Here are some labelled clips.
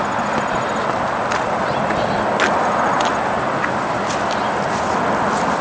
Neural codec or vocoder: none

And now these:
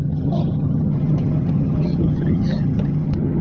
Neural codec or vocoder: vocoder, HiFi-GAN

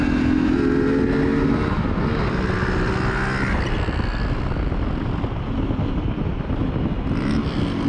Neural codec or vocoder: none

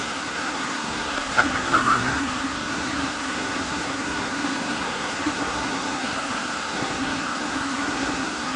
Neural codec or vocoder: codec, SNAC